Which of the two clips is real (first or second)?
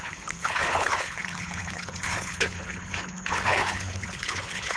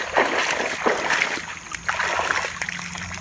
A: second